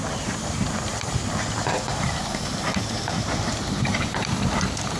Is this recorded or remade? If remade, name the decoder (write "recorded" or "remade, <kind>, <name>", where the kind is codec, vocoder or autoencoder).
remade, vocoder, BigVGAN v2